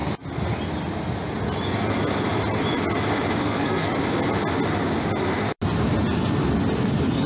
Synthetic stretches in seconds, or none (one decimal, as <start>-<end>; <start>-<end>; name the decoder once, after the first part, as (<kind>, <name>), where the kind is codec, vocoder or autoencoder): 3.4-3.9 (codec, SNAC)